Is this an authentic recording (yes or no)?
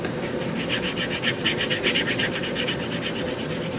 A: yes